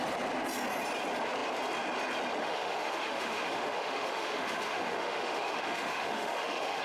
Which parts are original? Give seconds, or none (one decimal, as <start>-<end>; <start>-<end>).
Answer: 0.0-2.4